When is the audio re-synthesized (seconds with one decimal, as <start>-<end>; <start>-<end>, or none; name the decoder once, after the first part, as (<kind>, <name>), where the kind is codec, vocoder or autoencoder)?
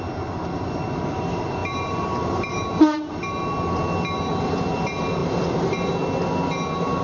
1.6-3.1 (vocoder, BigVGAN v2)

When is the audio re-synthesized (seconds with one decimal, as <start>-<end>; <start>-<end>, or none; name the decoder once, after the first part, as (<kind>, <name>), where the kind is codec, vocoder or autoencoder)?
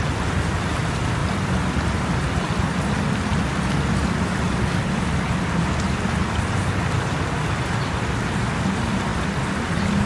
none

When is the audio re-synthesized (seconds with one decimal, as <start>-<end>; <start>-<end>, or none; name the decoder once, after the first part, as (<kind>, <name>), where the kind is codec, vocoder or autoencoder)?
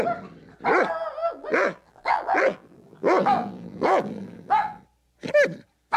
1.2-4.8 (vocoder, BigVGAN v2)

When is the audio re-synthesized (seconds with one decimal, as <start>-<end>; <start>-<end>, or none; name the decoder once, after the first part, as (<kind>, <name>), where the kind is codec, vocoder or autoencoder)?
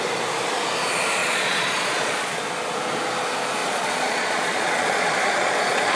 1.2-2.4 (vocoder, Vocos); 3.6-6.0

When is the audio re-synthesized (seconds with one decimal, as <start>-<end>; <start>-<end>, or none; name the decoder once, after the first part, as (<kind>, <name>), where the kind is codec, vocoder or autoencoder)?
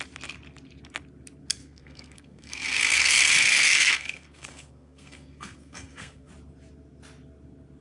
1.6-6.3 (codec, SNAC)